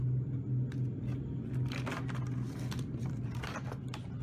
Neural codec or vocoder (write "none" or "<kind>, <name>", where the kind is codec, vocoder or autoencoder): none